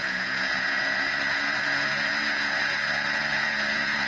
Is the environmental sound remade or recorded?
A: remade